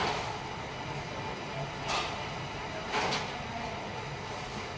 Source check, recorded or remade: recorded